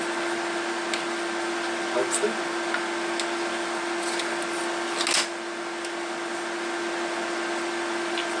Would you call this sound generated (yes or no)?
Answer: no